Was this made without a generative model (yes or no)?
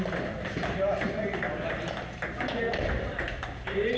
yes